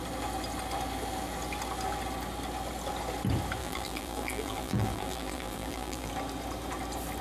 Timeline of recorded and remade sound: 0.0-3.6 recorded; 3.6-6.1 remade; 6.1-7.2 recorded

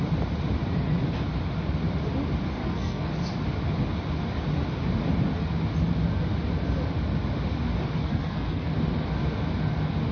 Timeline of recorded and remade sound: 0.0-2.6 recorded; 2.6-3.1 remade; 3.1-8.0 recorded; 8.0-8.7 remade; 8.7-10.1 recorded

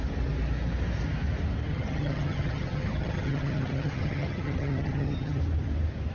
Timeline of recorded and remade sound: 0.0-1.7 recorded; 1.7-5.4 remade; 5.4-6.1 recorded

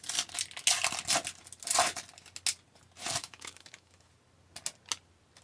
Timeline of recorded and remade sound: 0.0-3.2 recorded; 3.2-4.1 remade; 4.1-5.4 recorded

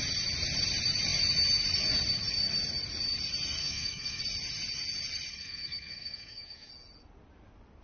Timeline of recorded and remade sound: 0.0-3.6 recorded; 3.6-4.2 remade; 4.2-5.3 recorded; 5.3-6.7 remade; 6.7-7.8 recorded